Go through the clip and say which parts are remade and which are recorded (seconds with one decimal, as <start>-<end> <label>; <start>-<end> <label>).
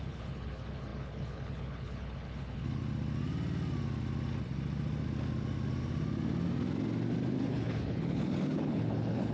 0.0-2.8 remade; 2.8-7.4 recorded; 7.4-9.3 remade